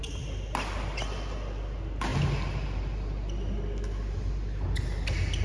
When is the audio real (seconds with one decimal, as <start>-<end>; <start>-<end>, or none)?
0.0-5.4

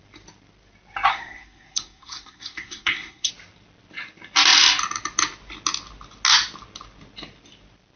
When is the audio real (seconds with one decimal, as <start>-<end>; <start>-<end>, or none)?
0.0-1.1; 3.3-8.0